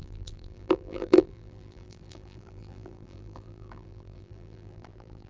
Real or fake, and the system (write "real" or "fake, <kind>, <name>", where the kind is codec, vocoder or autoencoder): fake, vocoder, BigVGAN v2